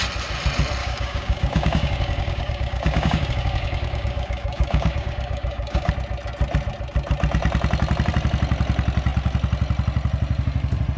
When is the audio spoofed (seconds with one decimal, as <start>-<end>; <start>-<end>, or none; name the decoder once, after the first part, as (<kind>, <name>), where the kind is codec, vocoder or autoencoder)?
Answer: 0.8-5.9 (codec, DAC)